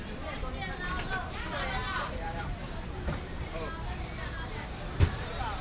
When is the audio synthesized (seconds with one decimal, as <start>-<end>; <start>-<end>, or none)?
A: 0.0-3.5; 4.9-5.6